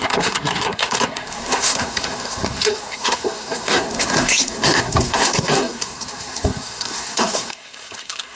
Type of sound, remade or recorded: remade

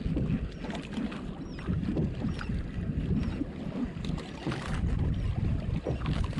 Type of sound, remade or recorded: recorded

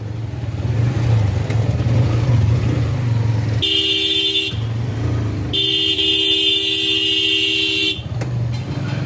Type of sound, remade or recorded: recorded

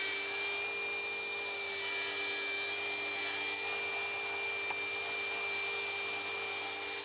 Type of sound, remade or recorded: recorded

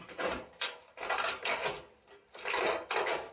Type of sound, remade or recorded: recorded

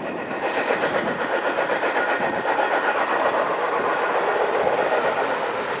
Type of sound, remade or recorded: recorded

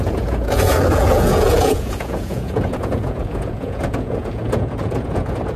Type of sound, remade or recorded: remade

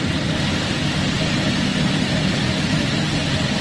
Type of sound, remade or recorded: recorded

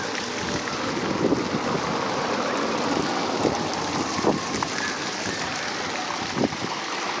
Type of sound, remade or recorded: recorded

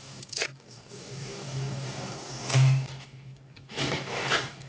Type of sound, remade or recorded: remade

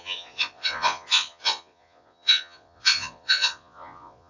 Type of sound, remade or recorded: remade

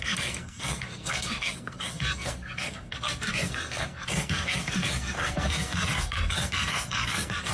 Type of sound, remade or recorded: remade